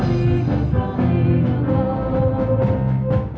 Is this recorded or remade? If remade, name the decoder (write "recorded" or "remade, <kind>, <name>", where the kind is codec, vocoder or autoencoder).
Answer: recorded